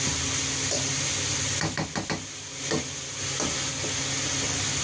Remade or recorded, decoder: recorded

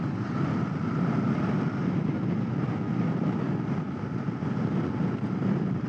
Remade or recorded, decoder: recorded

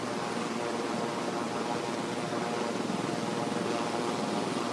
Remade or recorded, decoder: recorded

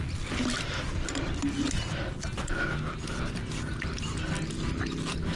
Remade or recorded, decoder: recorded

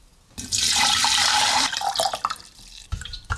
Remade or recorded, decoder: remade, vocoder, BigVGAN v2